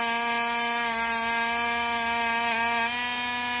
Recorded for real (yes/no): yes